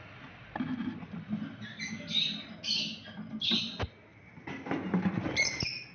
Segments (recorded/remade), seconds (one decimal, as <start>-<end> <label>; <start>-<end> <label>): 0.0-5.9 recorded